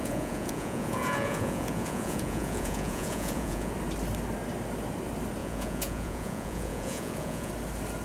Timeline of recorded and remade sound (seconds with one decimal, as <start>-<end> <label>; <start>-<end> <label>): 0.0-3.7 remade; 3.7-5.4 recorded; 5.4-7.5 remade; 7.5-8.0 recorded